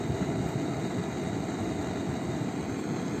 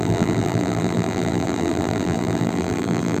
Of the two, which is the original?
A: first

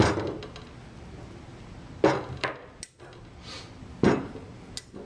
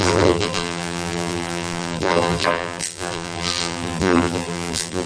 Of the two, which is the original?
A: first